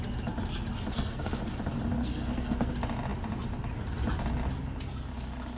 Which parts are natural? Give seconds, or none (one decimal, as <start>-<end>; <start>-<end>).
0.0-0.9; 1.4-2.0; 2.7-5.6